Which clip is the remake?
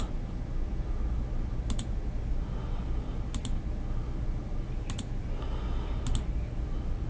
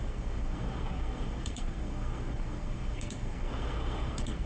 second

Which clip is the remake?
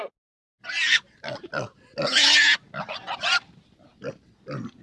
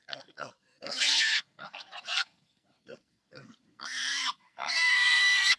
second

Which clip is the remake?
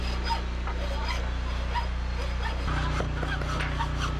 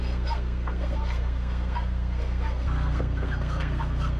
second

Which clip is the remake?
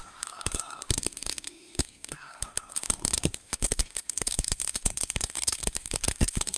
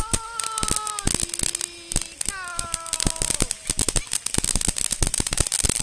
first